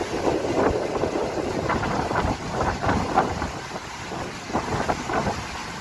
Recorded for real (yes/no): yes